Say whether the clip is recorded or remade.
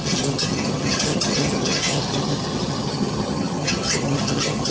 remade